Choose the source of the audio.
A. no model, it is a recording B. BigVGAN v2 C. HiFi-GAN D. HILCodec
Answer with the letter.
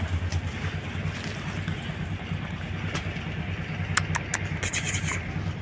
A